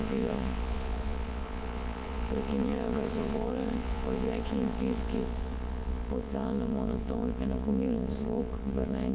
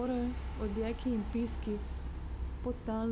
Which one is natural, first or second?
second